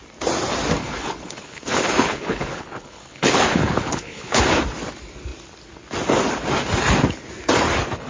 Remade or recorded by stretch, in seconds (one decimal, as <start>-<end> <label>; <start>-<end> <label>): 0.0-0.8 recorded; 0.8-4.4 remade; 4.4-8.1 recorded